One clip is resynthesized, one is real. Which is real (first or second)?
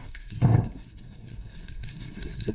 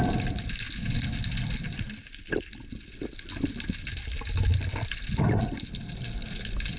second